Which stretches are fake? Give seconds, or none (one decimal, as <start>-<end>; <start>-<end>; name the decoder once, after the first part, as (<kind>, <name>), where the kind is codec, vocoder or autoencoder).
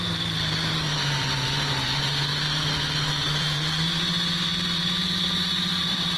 0.0-6.2 (vocoder, BigVGAN v2)